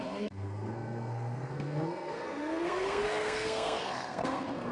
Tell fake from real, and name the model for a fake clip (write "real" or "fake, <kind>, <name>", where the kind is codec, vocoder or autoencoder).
fake, codec, SNAC